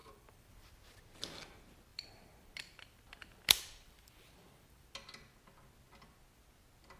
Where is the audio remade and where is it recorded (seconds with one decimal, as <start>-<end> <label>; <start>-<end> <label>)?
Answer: 0.0-0.7 remade; 0.7-1.9 recorded; 1.9-4.9 remade; 4.9-7.0 recorded